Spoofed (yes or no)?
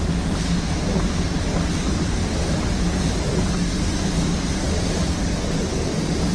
no